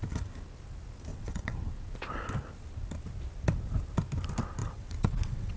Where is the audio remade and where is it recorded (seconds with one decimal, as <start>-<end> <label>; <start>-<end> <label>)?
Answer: 0.0-1.1 recorded; 1.1-1.7 remade; 1.7-4.6 recorded; 4.6-5.6 remade